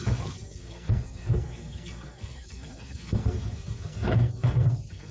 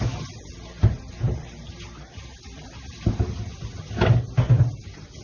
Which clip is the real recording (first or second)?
second